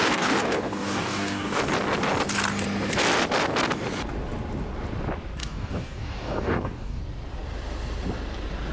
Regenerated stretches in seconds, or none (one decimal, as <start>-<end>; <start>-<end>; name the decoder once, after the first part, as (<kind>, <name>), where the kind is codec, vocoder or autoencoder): 0.0-1.6 (codec, DAC); 5.4-7.0